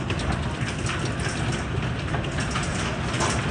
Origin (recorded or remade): recorded